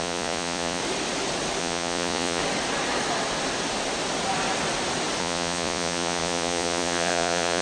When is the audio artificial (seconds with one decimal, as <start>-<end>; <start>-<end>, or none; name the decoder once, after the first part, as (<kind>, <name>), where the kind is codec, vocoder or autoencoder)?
0.0-0.8 (vocoder, Vocos); 1.6-2.4; 5.2-7.6